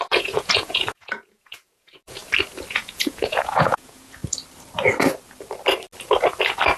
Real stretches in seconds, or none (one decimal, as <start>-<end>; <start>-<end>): 2.2-2.7; 4.2-6.8